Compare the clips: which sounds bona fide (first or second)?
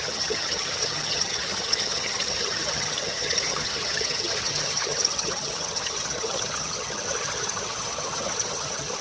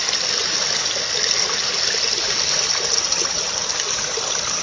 second